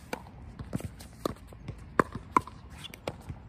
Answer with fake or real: real